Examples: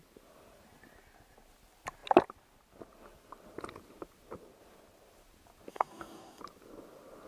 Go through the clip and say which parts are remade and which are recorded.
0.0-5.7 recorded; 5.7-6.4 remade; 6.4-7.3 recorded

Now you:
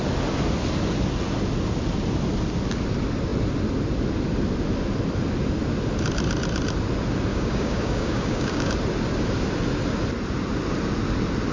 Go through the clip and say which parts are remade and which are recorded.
0.0-7.3 recorded; 7.3-8.7 remade; 8.7-11.5 recorded

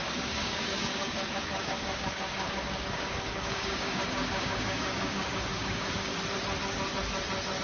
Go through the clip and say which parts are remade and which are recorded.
0.0-6.1 remade; 6.1-7.6 recorded

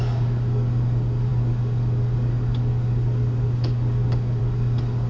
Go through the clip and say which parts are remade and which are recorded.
0.0-5.1 remade

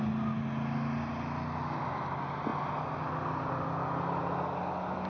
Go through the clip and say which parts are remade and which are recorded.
0.0-5.1 recorded